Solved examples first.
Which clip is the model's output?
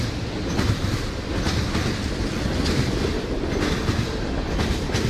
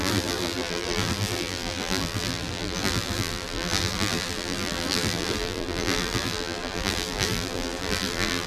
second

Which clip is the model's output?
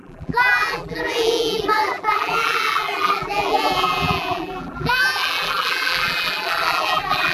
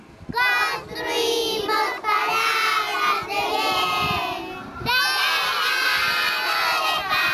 first